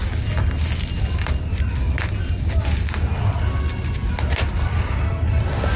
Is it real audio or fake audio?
real